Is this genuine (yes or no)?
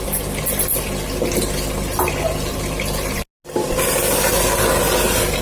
yes